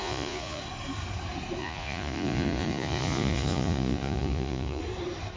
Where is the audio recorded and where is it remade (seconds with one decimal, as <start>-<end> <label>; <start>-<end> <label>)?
0.0-0.6 remade; 0.6-1.6 recorded; 1.6-4.8 remade; 4.8-5.4 recorded